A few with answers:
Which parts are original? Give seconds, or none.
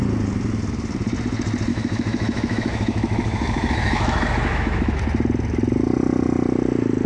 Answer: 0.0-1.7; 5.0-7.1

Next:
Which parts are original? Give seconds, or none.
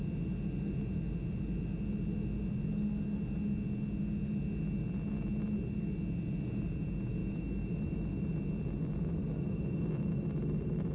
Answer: 0.0-7.2; 8.3-10.9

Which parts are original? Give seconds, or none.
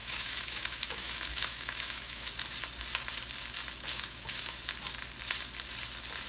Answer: 2.3-3.9; 4.6-6.3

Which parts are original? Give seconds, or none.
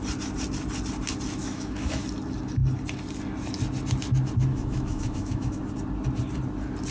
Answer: 0.0-1.4; 2.0-4.5; 5.6-6.9